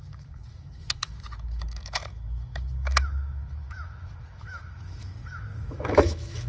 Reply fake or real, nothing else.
fake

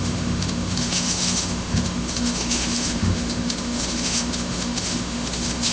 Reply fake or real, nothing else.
fake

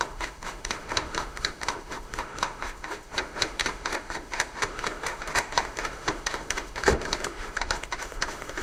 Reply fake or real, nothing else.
fake